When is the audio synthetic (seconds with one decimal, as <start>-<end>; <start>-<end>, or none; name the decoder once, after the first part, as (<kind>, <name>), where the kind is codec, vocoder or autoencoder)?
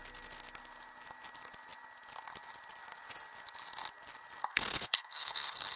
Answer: 4.4-5.8 (codec, SNAC)